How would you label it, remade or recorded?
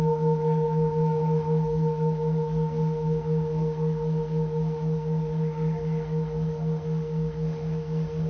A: remade